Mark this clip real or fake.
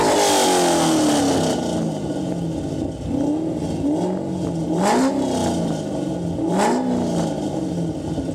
real